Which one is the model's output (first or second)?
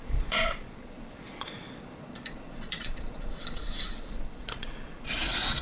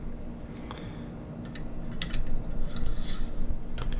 first